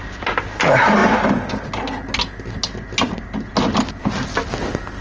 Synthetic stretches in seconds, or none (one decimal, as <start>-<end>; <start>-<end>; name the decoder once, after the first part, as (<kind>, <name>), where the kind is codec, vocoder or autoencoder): none